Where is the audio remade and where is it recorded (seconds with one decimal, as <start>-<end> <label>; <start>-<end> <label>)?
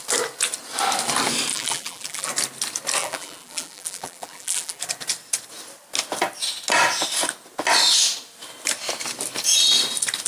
0.0-1.5 recorded; 1.5-2.3 remade; 2.3-3.0 recorded; 3.0-4.8 remade; 4.8-10.3 recorded